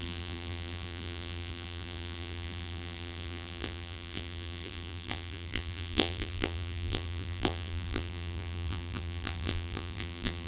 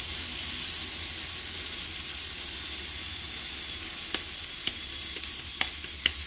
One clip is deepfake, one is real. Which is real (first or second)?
second